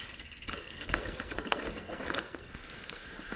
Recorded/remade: remade